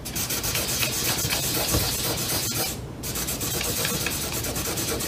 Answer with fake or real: real